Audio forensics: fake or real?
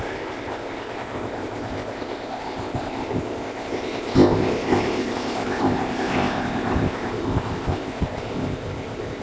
fake